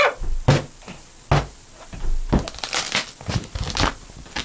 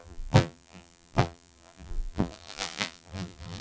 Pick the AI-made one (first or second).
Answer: second